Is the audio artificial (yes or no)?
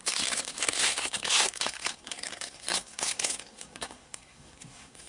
yes